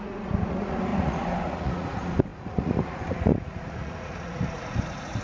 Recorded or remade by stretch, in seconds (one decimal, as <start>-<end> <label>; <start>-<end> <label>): 0.0-5.2 remade